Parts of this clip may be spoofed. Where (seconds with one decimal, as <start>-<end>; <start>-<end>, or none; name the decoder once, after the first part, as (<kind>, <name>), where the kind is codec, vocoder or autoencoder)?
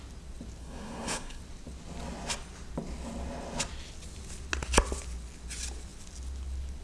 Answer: 0.6-1.4 (codec, SNAC)